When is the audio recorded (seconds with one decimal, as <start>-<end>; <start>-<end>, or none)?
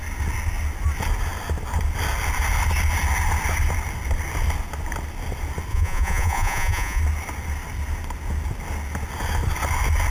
0.0-5.7; 7.0-10.1